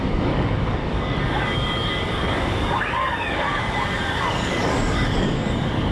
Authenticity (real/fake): fake